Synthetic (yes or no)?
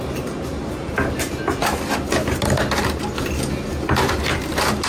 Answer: no